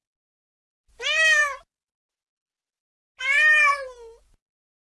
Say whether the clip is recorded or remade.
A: recorded